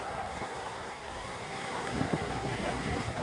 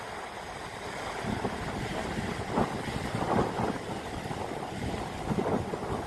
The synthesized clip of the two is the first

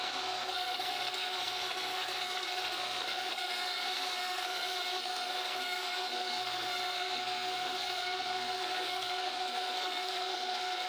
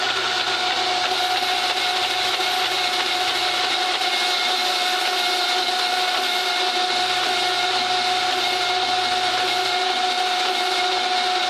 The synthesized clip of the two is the first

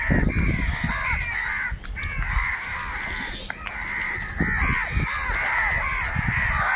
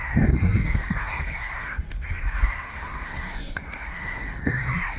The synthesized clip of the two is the second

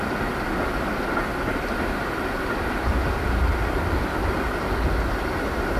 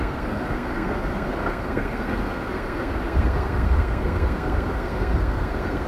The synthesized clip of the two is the second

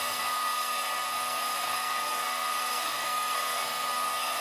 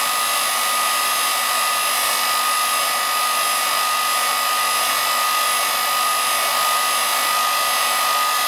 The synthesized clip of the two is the first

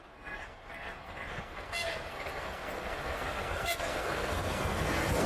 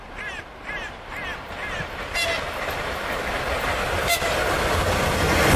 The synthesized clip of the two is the first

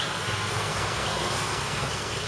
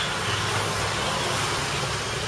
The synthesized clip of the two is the first